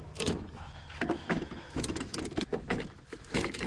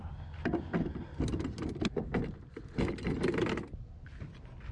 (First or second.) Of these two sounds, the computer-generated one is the first